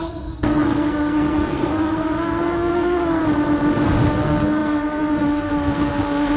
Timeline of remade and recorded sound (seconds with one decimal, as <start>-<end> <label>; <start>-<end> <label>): 0.0-3.2 remade; 3.2-4.1 recorded; 4.1-6.4 remade